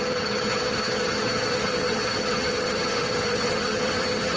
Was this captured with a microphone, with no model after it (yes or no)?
no